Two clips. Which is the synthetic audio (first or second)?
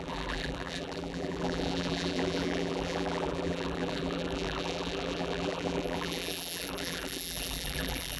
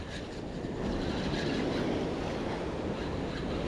first